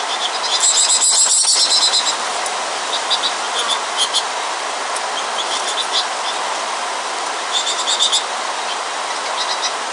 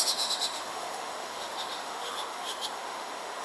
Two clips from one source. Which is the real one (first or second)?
first